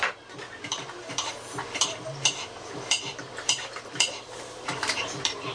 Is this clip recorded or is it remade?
remade